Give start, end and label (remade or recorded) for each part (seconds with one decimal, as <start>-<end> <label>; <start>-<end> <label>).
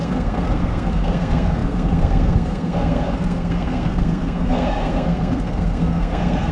0.0-6.5 remade